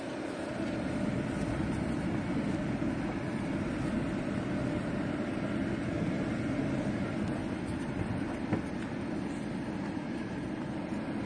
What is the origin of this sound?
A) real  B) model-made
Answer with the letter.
A